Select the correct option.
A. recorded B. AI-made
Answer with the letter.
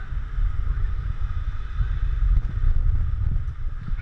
A